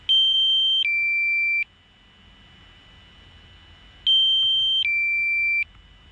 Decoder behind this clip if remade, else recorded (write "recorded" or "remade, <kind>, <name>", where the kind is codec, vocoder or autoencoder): recorded